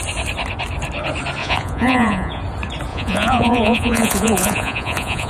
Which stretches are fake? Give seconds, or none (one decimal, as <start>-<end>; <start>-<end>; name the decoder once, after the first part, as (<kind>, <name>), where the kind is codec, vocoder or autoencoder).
1.4-2.4 (vocoder, Vocos); 2.9-5.3